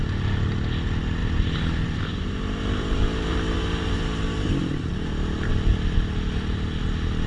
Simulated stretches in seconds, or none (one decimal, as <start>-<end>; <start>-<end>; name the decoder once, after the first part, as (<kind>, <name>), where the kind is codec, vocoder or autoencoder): 1.2-5.5 (vocoder, BigVGAN v2)